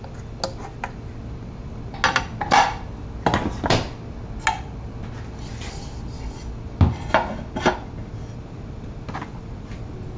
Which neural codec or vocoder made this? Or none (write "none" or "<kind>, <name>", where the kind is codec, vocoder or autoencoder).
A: none